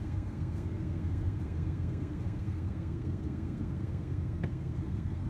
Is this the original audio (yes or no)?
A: no